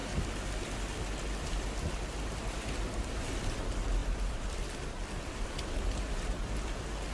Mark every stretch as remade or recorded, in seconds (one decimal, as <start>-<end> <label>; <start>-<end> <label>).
0.0-7.1 recorded